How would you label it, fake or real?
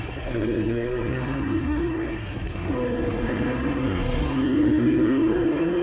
fake